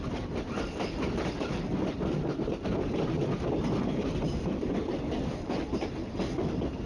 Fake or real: real